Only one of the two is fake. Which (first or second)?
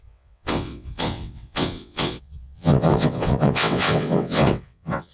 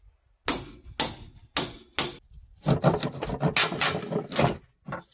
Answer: first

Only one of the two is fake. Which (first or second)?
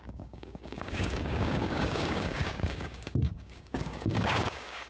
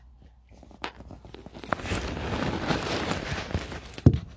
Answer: first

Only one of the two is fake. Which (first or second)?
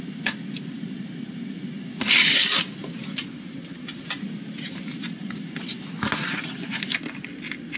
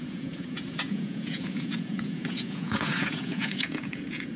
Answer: second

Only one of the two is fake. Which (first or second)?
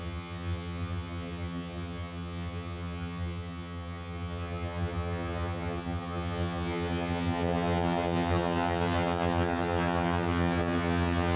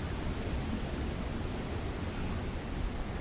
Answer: first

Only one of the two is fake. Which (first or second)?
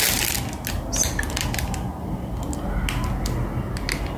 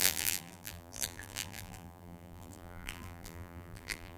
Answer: second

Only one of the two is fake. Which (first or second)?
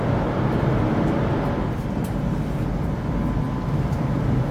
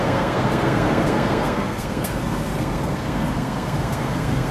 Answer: second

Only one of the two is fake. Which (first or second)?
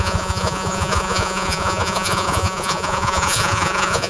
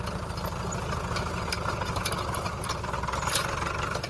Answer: first